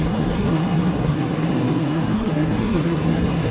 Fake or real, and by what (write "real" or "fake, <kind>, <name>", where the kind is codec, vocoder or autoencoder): fake, codec, SNAC